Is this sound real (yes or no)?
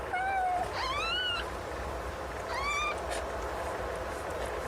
yes